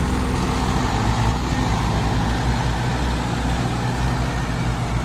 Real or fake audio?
real